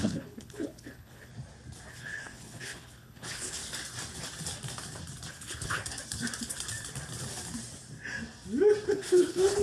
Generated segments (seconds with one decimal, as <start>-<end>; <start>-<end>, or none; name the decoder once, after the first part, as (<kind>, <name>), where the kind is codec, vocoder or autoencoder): 0.0-1.3 (codec, HILCodec); 1.9-3.6; 5.3-5.8; 8.9-9.6